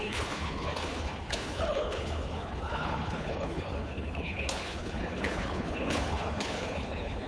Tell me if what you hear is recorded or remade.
remade